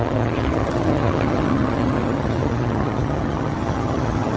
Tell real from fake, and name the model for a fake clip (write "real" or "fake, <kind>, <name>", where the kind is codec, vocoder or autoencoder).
fake, vocoder, HiFi-GAN